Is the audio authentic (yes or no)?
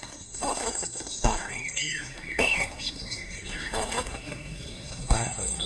no